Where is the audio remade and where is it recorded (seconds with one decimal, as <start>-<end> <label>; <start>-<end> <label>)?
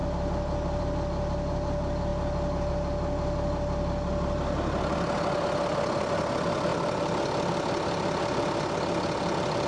0.0-9.7 recorded